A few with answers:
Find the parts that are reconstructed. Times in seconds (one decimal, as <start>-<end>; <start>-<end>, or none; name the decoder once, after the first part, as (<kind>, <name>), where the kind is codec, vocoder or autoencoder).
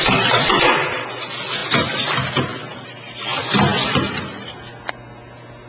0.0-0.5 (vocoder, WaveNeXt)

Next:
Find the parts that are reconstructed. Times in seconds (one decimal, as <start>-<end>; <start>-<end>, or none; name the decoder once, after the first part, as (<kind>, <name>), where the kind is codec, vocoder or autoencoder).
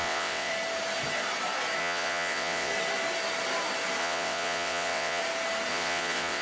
0.0-0.5 (vocoder, WaveNeXt); 1.8-2.7; 4.0-5.2; 5.7-6.4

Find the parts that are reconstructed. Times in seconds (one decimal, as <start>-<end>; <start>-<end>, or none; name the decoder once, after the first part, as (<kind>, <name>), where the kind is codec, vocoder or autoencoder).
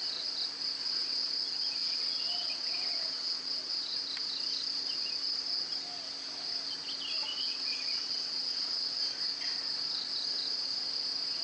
0.8-1.3 (vocoder, WaveNeXt); 1.8-4.0; 7.3-9.0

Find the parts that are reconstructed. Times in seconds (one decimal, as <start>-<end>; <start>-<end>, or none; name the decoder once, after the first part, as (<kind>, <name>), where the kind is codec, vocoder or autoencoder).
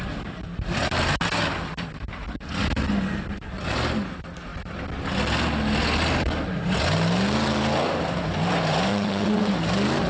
8.9-9.5 (vocoder, WaveNeXt)